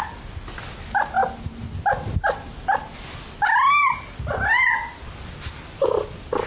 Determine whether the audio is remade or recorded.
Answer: recorded